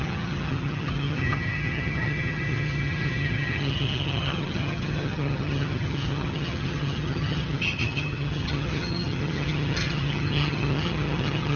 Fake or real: fake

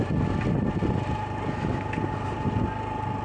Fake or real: real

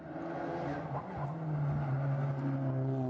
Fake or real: real